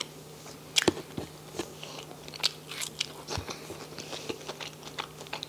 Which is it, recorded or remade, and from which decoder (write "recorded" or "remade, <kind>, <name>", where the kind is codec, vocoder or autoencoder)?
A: recorded